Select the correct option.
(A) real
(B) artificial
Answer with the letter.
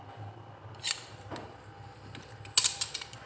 A